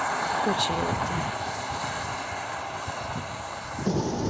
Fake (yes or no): yes